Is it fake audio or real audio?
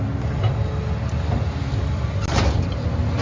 real